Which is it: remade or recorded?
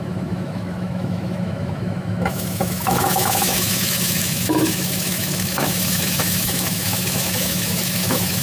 remade